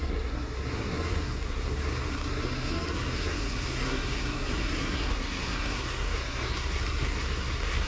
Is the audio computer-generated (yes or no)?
yes